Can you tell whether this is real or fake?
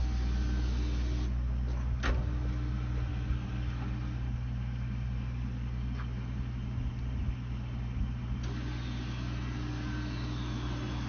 real